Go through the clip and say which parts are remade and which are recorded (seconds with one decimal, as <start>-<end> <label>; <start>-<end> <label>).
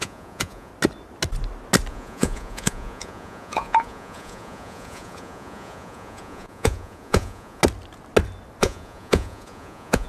0.0-0.7 remade; 0.7-1.9 recorded; 1.9-7.6 remade; 7.6-8.6 recorded; 8.6-10.1 remade